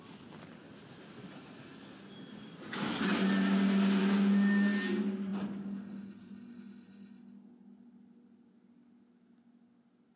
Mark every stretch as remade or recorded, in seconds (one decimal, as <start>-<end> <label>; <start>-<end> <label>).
0.0-10.2 recorded